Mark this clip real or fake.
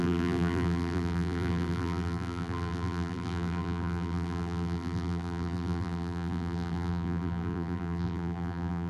fake